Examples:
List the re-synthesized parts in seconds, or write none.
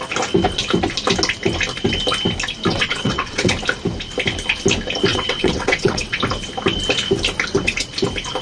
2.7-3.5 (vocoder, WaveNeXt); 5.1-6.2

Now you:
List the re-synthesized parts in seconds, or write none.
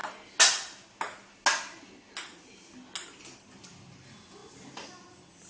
none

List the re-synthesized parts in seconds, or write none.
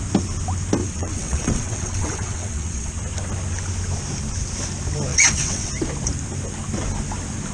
0.8-2.9 (vocoder, WaveNeXt); 5.1-5.7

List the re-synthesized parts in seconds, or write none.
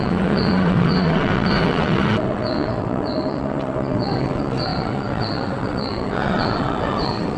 0.0-7.4 (vocoder, WaveNeXt)